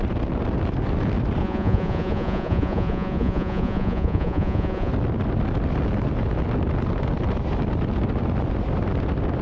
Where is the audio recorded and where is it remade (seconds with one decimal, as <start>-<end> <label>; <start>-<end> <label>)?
0.0-1.4 recorded; 1.4-4.9 remade; 4.9-9.4 recorded